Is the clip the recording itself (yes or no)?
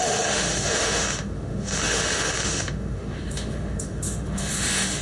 no